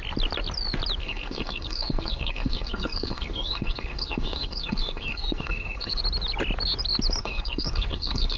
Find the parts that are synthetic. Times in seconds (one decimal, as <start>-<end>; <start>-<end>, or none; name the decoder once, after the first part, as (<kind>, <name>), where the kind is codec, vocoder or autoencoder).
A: 1.0-6.0 (codec, SNAC); 7.2-8.4